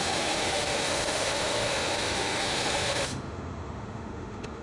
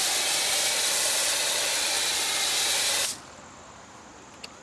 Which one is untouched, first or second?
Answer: second